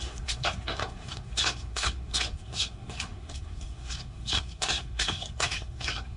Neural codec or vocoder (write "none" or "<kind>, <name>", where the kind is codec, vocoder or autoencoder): codec, SNAC